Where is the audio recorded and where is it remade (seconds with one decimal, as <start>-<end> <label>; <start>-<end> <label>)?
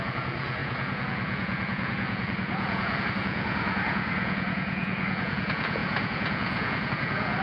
0.0-7.4 remade